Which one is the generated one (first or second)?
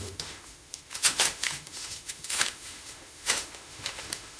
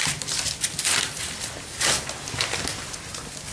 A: first